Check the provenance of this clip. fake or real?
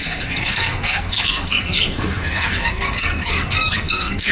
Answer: fake